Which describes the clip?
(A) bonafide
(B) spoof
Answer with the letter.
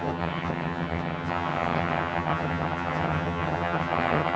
B